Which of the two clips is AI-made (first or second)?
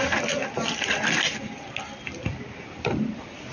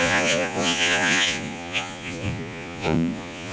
second